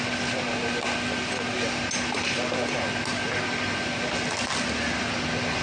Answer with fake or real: real